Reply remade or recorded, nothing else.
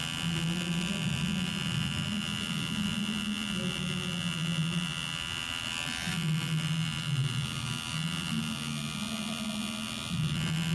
recorded